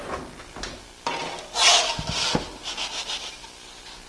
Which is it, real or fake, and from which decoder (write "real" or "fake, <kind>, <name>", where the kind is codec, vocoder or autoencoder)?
real